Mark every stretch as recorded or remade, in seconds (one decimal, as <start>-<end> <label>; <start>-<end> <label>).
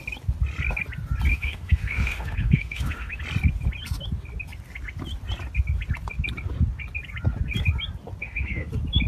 0.0-1.3 recorded; 1.3-3.2 remade; 3.2-8.2 recorded; 8.2-8.7 remade; 8.7-9.1 recorded